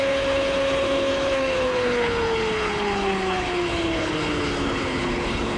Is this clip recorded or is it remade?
remade